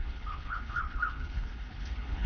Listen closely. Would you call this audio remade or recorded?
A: remade